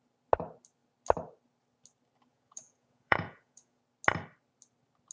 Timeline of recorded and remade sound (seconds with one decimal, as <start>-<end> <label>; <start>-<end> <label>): 0.0-2.3 recorded; 2.3-3.8 remade; 3.8-5.1 recorded